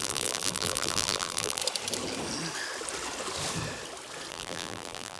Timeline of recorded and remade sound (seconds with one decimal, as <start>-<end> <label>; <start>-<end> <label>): 0.0-1.6 remade; 1.6-4.3 recorded; 4.3-5.2 remade

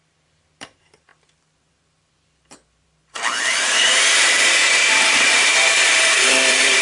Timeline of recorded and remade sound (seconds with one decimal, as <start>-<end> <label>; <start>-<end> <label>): 0.0-6.8 remade

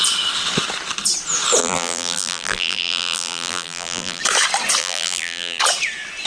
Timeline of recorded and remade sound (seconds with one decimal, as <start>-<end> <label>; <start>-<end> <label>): 0.0-1.6 recorded; 1.6-4.2 remade; 4.2-4.8 recorded; 4.8-5.6 remade; 5.6-6.3 recorded

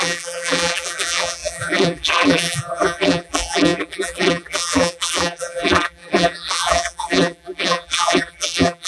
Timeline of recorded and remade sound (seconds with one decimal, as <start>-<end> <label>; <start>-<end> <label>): 0.0-8.9 remade

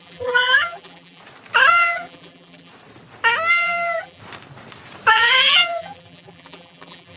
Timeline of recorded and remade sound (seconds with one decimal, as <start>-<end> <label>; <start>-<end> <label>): 0.0-1.2 remade; 1.2-1.7 recorded; 1.7-2.7 remade; 2.7-3.5 recorded; 3.5-4.2 remade; 4.2-5.1 recorded; 5.1-7.2 remade

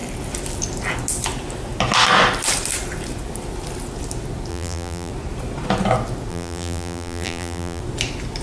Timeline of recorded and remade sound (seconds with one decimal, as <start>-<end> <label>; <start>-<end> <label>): 0.0-4.5 recorded; 4.5-5.1 remade; 5.1-6.3 recorded; 6.3-7.8 remade; 7.8-8.4 recorded